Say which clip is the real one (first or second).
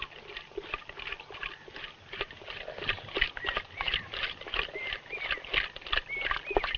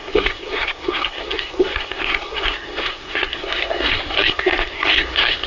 first